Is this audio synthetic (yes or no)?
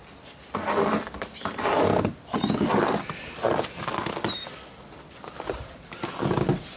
no